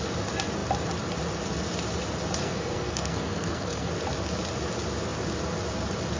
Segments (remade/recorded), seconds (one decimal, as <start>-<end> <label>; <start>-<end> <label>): 0.0-2.4 recorded; 2.4-3.9 remade; 3.9-6.2 recorded